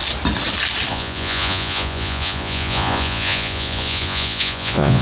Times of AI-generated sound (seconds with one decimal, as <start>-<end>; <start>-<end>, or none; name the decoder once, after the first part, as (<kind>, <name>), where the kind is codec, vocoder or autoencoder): 0.9-5.0 (vocoder, Vocos)